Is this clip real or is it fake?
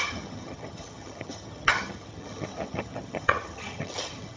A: fake